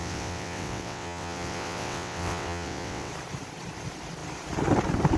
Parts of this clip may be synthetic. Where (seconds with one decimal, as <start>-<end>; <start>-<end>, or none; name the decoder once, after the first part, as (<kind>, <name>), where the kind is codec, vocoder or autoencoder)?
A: 0.0-3.1 (vocoder, WaveNeXt)